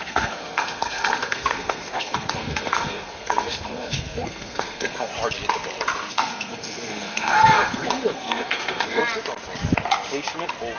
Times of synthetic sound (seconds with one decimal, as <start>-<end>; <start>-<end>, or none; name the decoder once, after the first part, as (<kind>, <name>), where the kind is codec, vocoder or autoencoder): 0.0-5.1 (codec, SNAC); 6.1-9.0